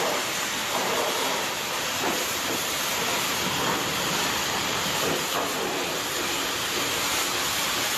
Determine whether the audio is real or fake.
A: fake